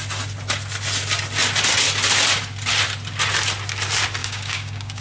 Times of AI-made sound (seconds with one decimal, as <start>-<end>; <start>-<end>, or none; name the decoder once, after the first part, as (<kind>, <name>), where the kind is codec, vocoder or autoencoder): 4.2-5.0 (codec, DAC)

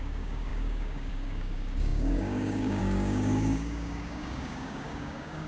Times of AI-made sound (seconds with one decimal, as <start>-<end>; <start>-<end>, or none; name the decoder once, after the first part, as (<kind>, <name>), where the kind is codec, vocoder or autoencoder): 0.0-5.5 (codec, DAC)

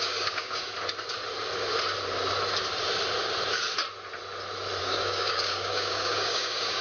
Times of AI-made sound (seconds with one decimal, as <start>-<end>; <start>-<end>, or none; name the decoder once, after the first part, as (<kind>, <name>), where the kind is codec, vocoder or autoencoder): 0.0-0.7 (codec, DAC); 4.8-6.8

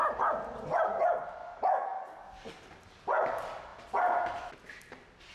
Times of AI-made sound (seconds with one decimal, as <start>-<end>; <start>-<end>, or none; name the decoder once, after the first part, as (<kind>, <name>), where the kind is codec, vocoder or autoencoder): 1.4-2.5 (codec, DAC)

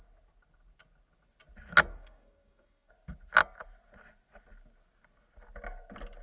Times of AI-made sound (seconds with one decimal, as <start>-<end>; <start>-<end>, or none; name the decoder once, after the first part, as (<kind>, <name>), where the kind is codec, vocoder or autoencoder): 1.9-2.9 (codec, DAC)